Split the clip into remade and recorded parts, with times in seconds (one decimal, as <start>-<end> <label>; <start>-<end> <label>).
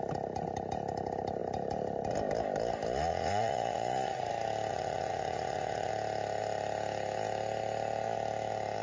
0.0-3.1 recorded; 3.1-4.3 remade; 4.3-4.7 recorded; 4.7-5.9 remade; 5.9-8.8 recorded